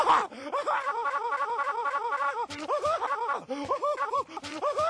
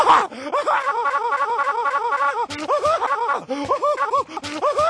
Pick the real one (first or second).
second